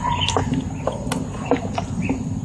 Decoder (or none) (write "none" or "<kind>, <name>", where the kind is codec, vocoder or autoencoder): none